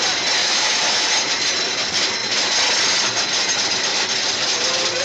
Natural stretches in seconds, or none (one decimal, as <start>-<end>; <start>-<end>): 0.0-0.4; 1.1-5.0